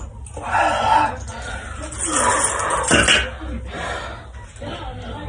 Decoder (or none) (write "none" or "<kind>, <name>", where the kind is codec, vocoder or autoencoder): none